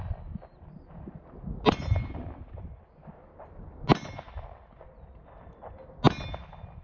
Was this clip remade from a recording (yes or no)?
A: no